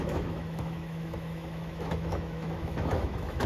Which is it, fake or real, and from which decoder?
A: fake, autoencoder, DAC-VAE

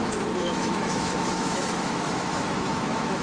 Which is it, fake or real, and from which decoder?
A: fake, autoencoder, DAC-VAE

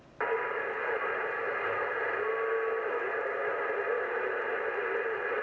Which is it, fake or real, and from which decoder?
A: real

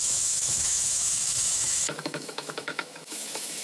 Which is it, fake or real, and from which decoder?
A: fake, autoencoder, DAC-VAE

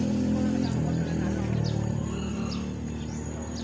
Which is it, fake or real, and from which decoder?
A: real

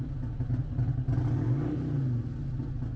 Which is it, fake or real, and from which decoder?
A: real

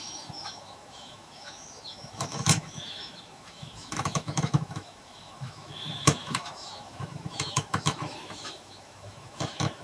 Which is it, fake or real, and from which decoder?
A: fake, autoencoder, DAC-VAE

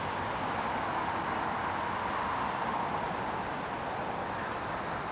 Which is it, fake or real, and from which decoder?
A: real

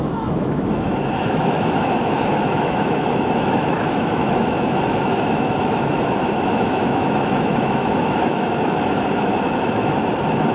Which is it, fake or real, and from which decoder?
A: fake, autoencoder, DAC-VAE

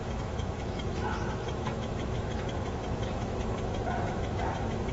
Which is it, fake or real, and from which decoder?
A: fake, autoencoder, DAC-VAE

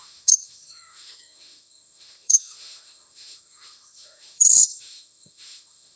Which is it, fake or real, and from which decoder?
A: fake, autoencoder, DAC-VAE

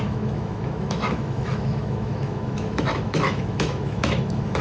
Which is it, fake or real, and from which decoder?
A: fake, autoencoder, DAC-VAE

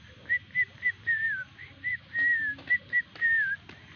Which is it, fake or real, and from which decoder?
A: real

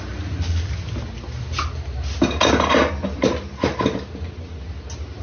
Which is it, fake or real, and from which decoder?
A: real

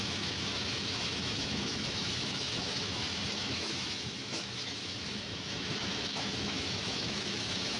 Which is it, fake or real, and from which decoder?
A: fake, autoencoder, DAC-VAE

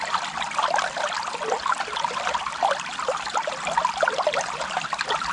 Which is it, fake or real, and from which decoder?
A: real